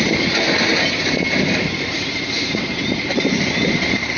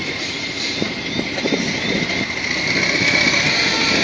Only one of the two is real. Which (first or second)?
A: second